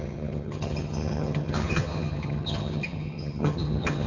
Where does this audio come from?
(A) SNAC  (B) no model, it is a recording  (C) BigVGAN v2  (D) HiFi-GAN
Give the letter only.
D